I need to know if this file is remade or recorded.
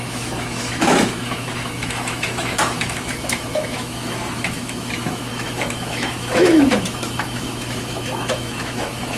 remade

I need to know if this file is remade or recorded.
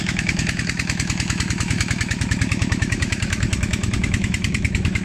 remade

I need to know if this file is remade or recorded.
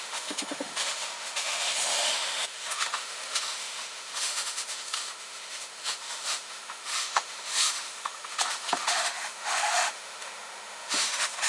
remade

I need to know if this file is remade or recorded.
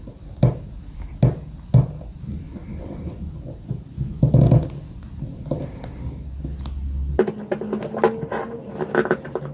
recorded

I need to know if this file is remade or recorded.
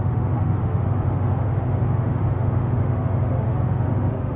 remade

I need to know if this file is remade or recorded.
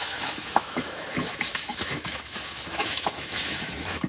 remade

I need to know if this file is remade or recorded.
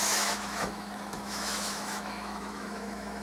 remade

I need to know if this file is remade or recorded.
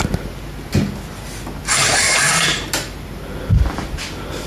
recorded